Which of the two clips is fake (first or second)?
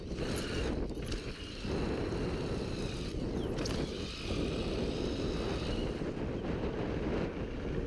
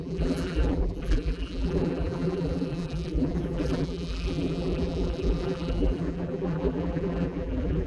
second